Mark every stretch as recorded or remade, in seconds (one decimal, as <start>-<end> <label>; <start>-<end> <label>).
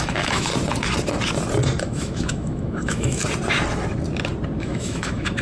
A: 0.0-0.5 remade; 0.5-1.8 recorded; 1.8-3.2 remade; 3.2-4.6 recorded; 4.6-5.4 remade